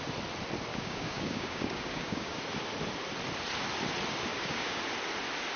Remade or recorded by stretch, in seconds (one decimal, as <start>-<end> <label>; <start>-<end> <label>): 0.0-0.7 recorded; 0.7-2.4 remade; 2.4-4.3 recorded; 4.3-4.8 remade; 4.8-5.6 recorded